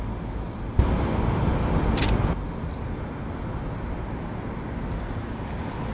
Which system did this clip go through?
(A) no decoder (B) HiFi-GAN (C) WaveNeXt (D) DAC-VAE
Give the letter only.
A